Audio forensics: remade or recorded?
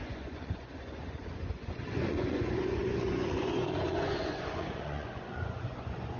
remade